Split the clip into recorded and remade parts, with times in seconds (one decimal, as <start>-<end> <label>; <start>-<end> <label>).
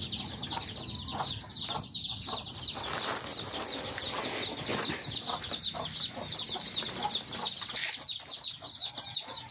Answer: 0.0-9.5 recorded